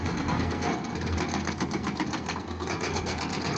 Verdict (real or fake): fake